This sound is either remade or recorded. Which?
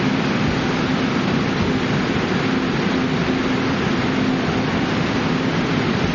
recorded